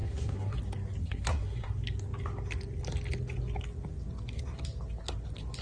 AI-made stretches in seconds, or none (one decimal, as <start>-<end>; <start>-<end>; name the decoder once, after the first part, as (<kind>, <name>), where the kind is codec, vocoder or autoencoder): 0.0-0.6 (codec, SNAC); 1.0-1.7